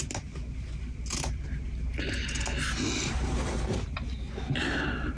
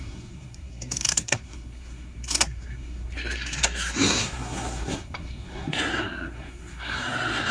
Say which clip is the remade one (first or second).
second